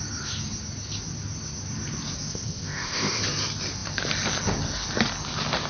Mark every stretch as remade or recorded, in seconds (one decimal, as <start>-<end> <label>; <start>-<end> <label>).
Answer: 0.0-2.3 recorded; 2.3-3.2 remade; 3.2-5.7 recorded